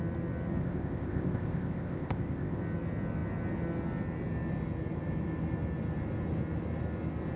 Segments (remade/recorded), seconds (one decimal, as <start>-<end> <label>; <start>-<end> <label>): 0.0-0.6 recorded; 0.6-2.6 remade; 2.6-7.4 recorded